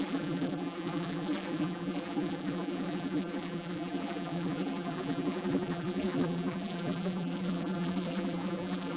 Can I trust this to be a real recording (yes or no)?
no